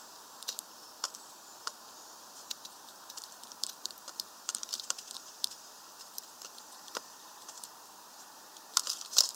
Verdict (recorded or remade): remade